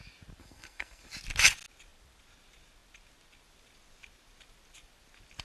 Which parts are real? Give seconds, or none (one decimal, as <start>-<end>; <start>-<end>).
0.0-0.4; 1.1-5.4